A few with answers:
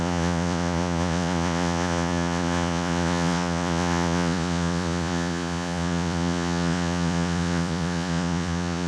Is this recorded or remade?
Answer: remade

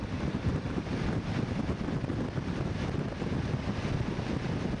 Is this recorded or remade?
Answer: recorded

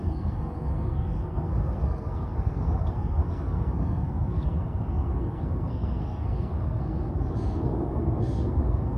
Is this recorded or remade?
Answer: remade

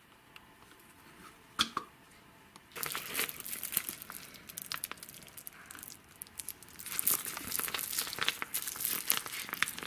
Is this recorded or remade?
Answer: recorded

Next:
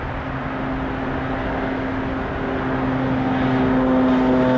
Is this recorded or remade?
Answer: recorded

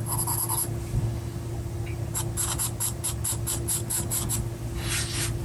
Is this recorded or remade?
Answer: recorded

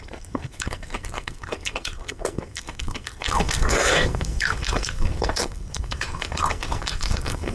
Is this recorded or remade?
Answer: remade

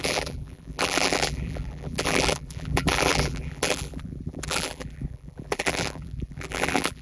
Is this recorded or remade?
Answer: remade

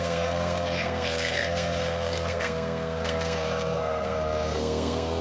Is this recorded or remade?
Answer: remade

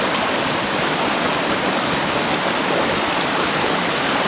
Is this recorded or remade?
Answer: recorded